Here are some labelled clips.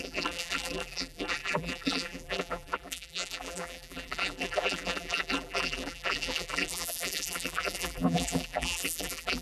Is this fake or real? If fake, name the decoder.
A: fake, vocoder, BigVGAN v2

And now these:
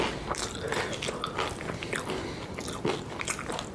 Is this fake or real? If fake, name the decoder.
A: real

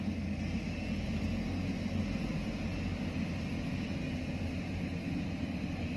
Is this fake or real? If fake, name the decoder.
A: real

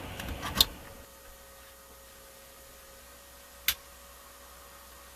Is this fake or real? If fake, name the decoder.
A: real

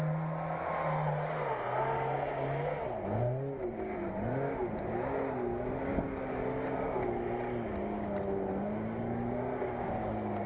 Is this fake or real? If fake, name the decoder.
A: real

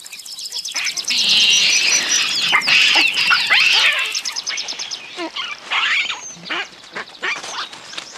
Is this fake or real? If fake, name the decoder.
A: real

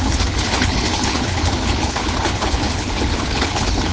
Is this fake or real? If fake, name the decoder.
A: fake, codec, HILCodec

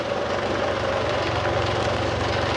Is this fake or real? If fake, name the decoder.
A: real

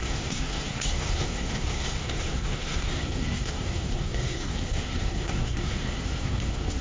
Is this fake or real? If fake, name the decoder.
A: fake, codec, SNAC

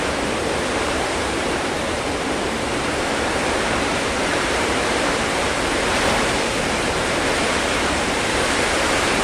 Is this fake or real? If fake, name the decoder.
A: fake, vocoder, BigVGAN v2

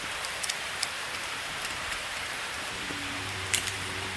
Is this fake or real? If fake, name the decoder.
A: fake, vocoder, BigVGAN v2